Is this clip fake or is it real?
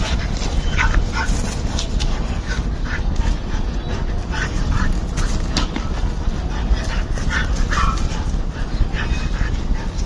real